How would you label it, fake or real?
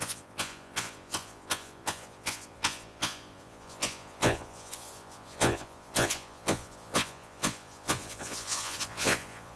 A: fake